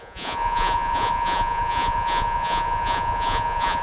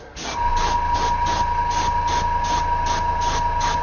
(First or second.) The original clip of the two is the second